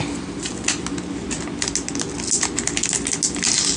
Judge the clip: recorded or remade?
recorded